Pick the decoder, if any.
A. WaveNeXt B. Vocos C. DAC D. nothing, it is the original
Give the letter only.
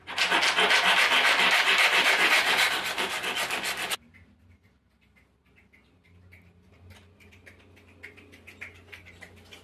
D